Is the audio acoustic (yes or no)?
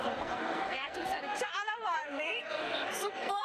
no